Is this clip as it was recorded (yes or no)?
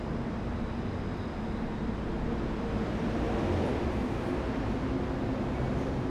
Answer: yes